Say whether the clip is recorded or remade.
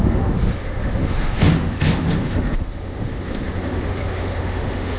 remade